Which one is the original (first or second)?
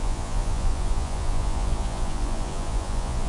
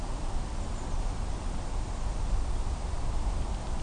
second